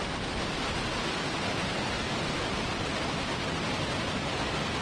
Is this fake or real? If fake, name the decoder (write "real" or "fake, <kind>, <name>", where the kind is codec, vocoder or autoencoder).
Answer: real